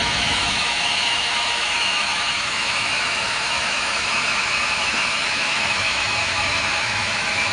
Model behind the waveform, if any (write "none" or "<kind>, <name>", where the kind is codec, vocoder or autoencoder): autoencoder, DAC-VAE